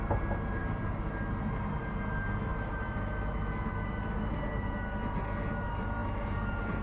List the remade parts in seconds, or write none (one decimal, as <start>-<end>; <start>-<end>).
none